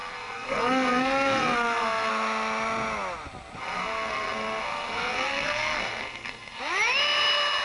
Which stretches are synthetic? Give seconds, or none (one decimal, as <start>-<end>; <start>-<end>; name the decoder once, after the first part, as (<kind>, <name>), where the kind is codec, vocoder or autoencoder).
0.0-2.1 (codec, SNAC); 3.6-6.6